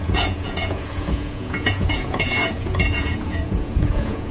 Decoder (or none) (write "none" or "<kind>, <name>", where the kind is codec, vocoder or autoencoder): vocoder, Vocos